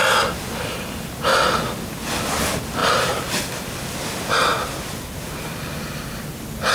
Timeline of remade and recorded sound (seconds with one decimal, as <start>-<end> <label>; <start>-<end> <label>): 0.0-2.8 recorded; 2.8-3.4 remade; 3.4-6.7 recorded